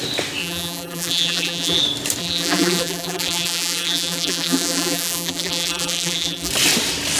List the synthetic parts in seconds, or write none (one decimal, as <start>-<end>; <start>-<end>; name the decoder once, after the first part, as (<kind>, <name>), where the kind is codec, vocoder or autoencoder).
0.4-1.8 (vocoder, BigVGAN v2); 2.2-6.5